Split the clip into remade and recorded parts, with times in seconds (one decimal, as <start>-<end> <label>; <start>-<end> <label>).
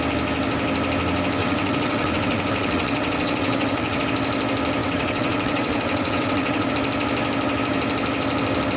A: 0.0-1.4 recorded; 1.4-4.0 remade; 4.0-4.8 recorded; 4.8-6.7 remade; 6.7-8.8 recorded